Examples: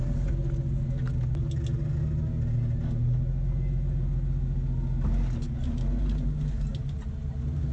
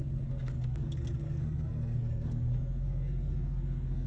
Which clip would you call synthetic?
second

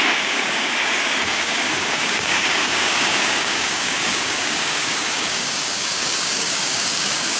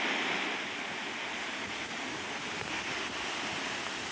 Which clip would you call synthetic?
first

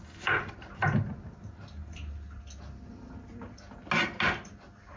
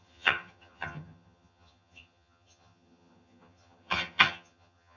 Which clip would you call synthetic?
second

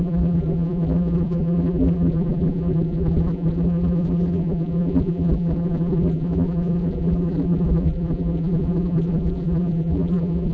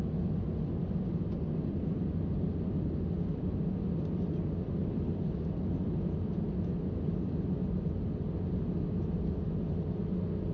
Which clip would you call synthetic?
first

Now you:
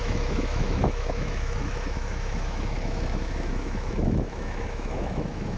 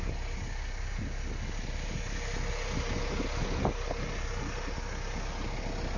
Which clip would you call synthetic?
first